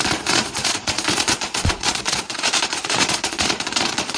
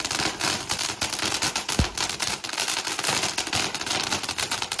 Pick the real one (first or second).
second